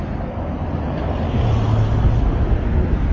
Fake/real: real